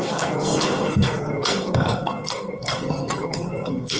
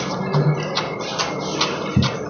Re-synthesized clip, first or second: first